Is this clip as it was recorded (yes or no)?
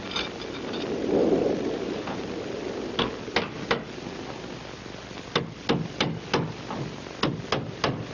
yes